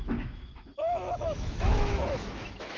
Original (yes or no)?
no